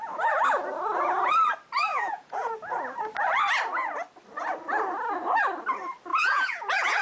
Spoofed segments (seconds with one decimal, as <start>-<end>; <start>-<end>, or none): 1.9-2.5; 6.1-7.0